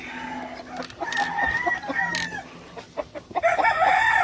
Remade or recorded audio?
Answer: recorded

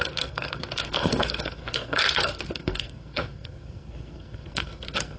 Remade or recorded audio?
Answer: remade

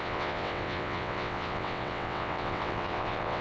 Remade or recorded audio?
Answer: remade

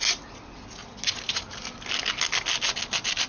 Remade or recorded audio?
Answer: recorded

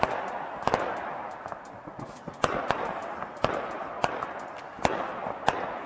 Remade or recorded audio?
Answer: recorded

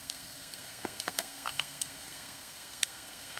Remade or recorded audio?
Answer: remade